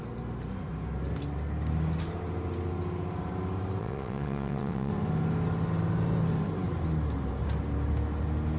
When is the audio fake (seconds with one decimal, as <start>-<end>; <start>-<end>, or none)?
3.8-4.9